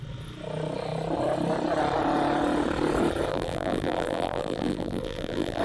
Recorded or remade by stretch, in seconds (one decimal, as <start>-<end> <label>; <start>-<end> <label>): 0.0-3.3 recorded; 3.3-5.6 remade